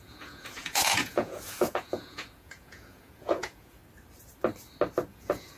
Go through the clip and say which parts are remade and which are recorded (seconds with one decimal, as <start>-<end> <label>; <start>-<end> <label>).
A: 0.0-3.8 remade; 3.8-5.1 recorded; 5.1-5.6 remade